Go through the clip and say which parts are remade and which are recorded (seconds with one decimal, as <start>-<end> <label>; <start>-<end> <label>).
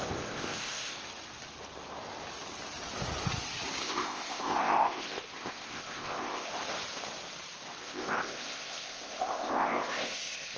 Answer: 0.0-1.0 remade; 1.0-3.8 recorded; 3.8-6.5 remade; 6.5-7.8 recorded; 7.8-10.6 remade